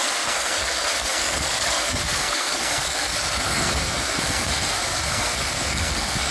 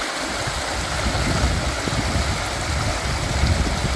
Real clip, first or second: second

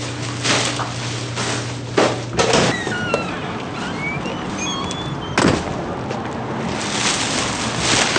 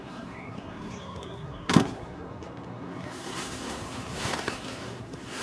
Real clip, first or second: first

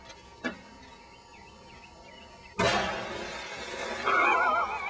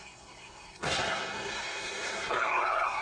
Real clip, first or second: first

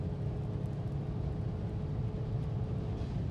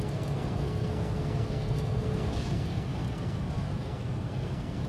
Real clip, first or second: first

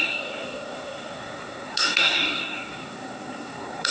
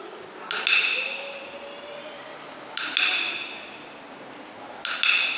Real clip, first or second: second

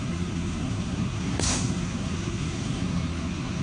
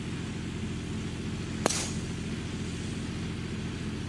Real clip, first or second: second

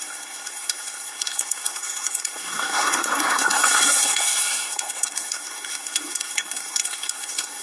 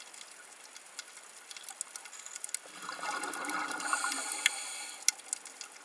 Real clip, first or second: second